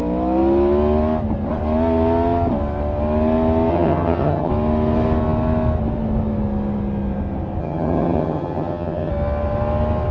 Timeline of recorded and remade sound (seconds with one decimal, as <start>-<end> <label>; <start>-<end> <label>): 0.0-3.7 recorded; 3.7-4.5 remade; 4.5-7.6 recorded; 7.6-9.1 remade; 9.1-10.1 recorded